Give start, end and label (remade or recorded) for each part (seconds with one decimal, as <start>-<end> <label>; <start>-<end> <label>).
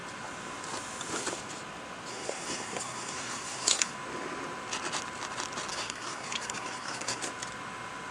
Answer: 0.0-2.1 recorded; 2.1-3.9 remade; 3.9-5.7 recorded; 5.7-7.2 remade; 7.2-8.1 recorded